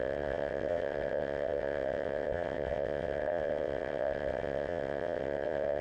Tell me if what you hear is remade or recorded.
remade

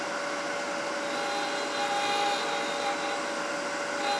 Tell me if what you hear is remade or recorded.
recorded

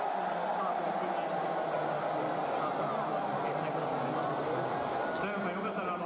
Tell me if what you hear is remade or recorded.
recorded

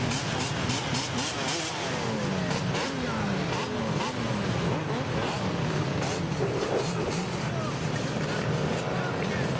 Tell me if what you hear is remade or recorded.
recorded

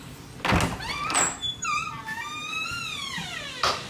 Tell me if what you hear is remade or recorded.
recorded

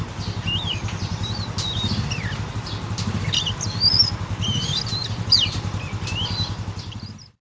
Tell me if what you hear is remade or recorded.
recorded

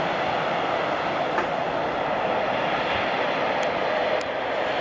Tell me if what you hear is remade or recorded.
recorded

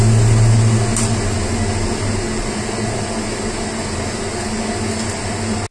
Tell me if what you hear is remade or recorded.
recorded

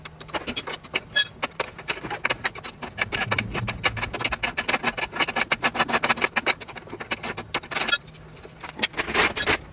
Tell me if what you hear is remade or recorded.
recorded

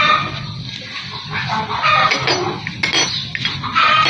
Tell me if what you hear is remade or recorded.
recorded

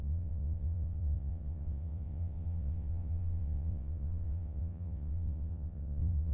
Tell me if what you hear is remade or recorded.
remade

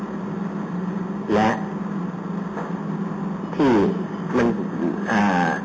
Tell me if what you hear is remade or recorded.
recorded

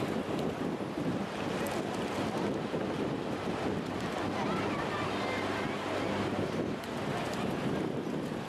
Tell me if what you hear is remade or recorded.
recorded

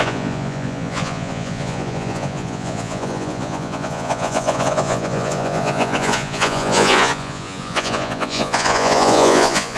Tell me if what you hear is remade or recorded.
remade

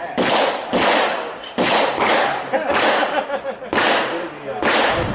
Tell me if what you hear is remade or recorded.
recorded